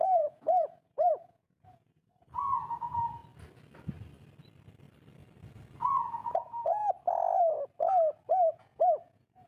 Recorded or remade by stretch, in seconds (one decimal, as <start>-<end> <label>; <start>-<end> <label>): 0.0-3.2 remade; 3.2-5.9 recorded; 5.9-6.8 remade; 6.8-8.5 recorded; 8.5-9.5 remade